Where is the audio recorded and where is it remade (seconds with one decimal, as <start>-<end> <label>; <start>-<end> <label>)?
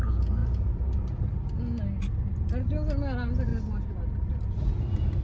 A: 0.0-5.2 recorded